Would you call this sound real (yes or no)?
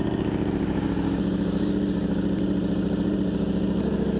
yes